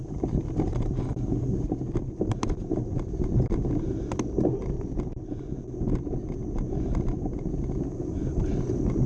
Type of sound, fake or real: real